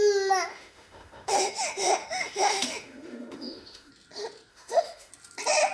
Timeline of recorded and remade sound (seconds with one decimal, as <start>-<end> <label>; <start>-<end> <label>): 0.0-0.5 recorded; 0.5-3.9 remade; 3.9-4.5 recorded; 4.5-5.1 remade; 5.1-5.7 recorded